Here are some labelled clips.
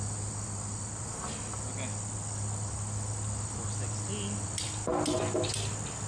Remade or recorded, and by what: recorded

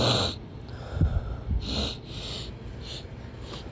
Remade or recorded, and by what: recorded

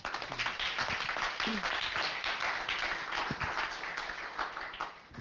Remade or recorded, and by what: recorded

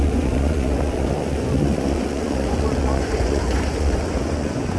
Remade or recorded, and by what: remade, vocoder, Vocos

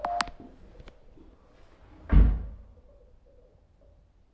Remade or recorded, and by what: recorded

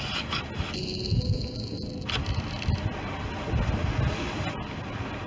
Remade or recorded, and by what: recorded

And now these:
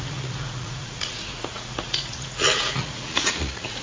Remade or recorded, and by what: remade, vocoder, Vocos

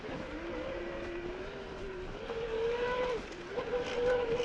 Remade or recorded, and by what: recorded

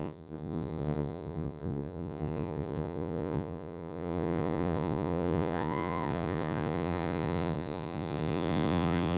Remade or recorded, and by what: remade, vocoder, Vocos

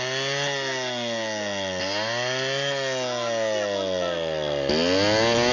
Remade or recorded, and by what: recorded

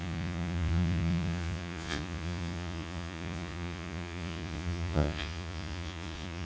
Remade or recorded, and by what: remade, vocoder, Vocos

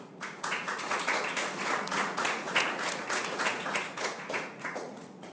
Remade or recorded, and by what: remade, vocoder, Vocos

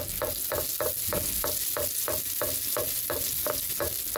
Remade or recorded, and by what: recorded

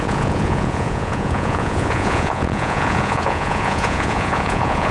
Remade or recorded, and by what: remade, vocoder, Vocos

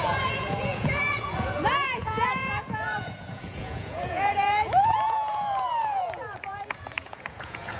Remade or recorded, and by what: remade, vocoder, Vocos